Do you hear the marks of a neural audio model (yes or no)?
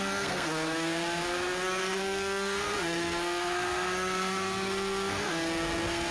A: yes